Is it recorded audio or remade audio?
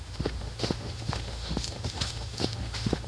remade